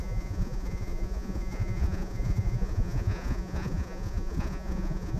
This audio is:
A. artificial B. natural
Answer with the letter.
A